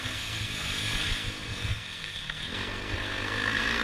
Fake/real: fake